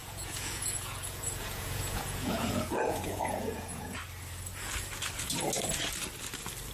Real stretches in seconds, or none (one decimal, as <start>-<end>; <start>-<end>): 4.0-6.7